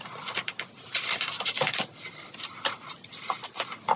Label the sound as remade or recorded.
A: recorded